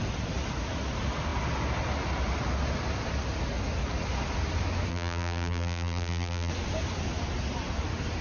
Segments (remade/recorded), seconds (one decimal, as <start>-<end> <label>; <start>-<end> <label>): 0.0-4.9 recorded; 4.9-6.5 remade; 6.5-8.2 recorded